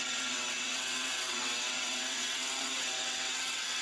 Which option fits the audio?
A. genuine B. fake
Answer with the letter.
B